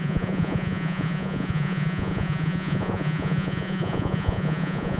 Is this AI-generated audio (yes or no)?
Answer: yes